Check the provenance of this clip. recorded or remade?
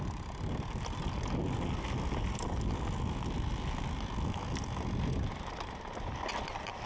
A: recorded